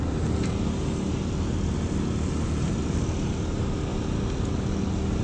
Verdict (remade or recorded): recorded